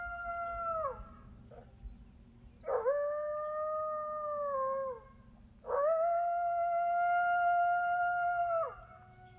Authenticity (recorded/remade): recorded